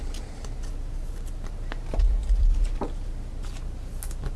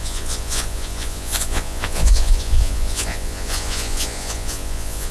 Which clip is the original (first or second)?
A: first